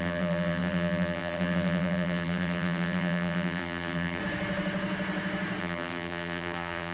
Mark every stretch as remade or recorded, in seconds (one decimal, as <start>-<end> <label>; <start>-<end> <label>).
0.0-4.2 remade; 4.2-5.6 recorded; 5.6-6.9 remade